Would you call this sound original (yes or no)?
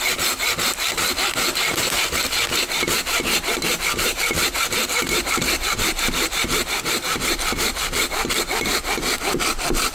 yes